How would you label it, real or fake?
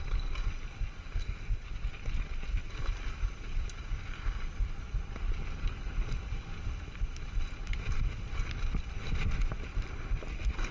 real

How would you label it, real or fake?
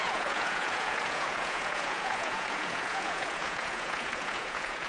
fake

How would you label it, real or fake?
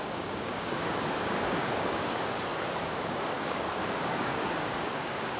fake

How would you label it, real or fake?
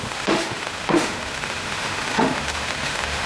fake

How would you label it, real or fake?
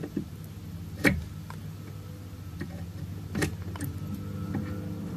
real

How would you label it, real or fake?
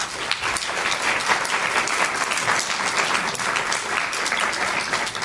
real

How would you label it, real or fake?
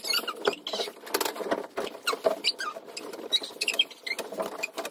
real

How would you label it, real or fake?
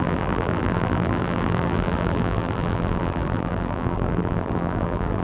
fake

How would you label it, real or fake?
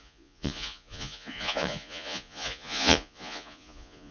fake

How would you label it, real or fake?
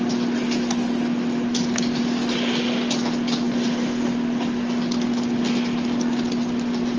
real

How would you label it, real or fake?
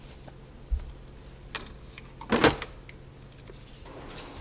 real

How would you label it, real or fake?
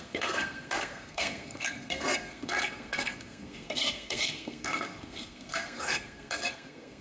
fake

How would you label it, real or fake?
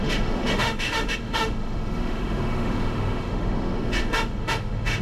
fake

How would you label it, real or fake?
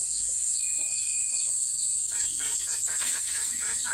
fake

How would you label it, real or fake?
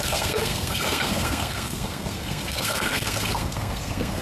fake